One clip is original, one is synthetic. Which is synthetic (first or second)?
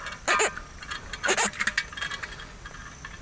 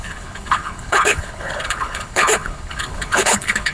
second